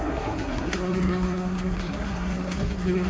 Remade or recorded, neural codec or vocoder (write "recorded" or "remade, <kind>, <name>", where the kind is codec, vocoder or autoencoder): remade, codec, SNAC